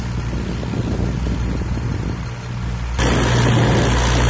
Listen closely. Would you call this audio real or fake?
real